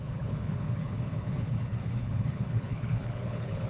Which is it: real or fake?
fake